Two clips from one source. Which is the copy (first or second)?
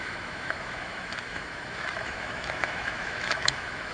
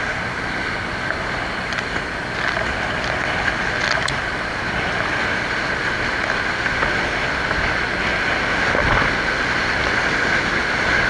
first